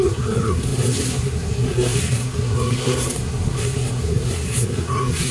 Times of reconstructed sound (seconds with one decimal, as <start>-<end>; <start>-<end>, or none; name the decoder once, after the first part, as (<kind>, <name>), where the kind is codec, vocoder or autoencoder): 0.0-5.3 (codec, SNAC)